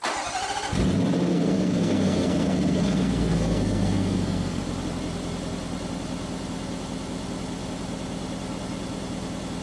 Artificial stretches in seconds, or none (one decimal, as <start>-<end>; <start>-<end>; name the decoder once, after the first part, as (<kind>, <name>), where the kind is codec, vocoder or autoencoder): 1.3-4.6 (codec, SNAC)